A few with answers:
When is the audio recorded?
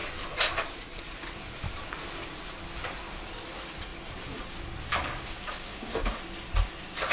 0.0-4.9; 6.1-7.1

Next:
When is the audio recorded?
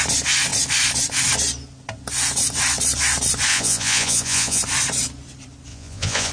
0.0-3.5; 4.6-5.7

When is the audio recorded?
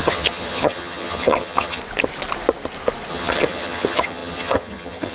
1.8-3.1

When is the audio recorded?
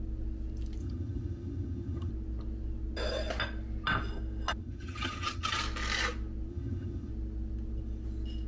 0.0-0.8; 2.1-4.6; 5.6-6.5; 7.1-8.5